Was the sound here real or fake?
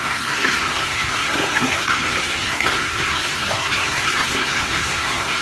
fake